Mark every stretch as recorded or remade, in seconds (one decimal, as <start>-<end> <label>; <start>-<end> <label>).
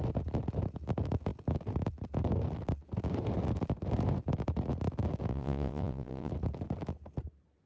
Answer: 0.0-5.3 recorded; 5.3-6.3 remade; 6.3-7.7 recorded